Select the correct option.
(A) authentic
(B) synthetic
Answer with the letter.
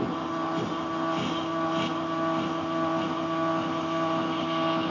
A